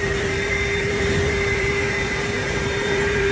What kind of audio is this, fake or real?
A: fake